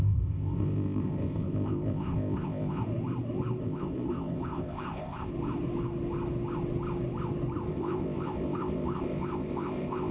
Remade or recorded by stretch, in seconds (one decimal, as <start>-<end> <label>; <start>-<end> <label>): 0.0-2.8 remade; 2.8-3.6 recorded; 3.6-5.3 remade; 5.3-7.7 recorded; 7.7-10.1 remade